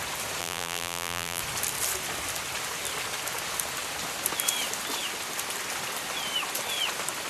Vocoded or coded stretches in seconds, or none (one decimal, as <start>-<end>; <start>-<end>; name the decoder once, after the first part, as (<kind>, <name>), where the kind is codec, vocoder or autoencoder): 0.4-1.4 (vocoder, BigVGAN v2)